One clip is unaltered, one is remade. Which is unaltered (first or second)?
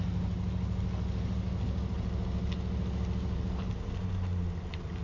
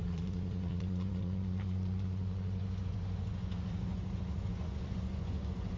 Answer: first